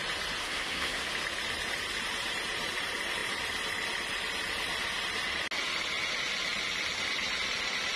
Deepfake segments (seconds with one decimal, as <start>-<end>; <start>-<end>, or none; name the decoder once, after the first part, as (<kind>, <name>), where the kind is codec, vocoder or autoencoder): 0.4-1.1 (codec, SNAC)